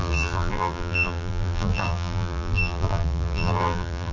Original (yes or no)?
no